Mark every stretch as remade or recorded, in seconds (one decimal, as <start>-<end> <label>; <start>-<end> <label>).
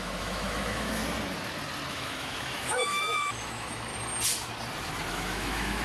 0.0-1.0 remade; 1.0-1.9 recorded; 1.9-3.9 remade; 3.9-5.1 recorded; 5.1-5.8 remade